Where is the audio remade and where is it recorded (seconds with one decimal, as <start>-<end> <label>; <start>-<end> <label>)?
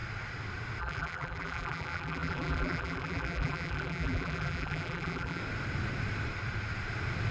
0.0-0.8 recorded; 0.8-5.4 remade; 5.4-7.3 recorded